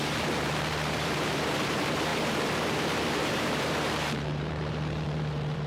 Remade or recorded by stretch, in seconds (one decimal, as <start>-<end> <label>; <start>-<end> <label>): 0.0-5.7 remade